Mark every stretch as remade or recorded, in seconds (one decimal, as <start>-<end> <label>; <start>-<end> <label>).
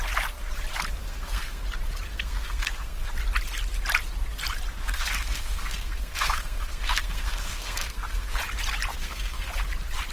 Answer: 0.0-1.0 recorded; 1.0-1.6 remade; 1.6-2.1 recorded; 2.1-3.1 remade; 3.1-4.8 recorded; 4.8-8.4 remade; 8.4-8.9 recorded; 8.9-9.5 remade; 9.5-10.1 recorded